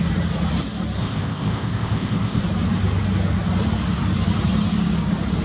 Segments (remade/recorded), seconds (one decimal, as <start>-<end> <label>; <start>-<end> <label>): 0.0-1.0 recorded; 1.0-2.4 remade; 2.4-5.4 recorded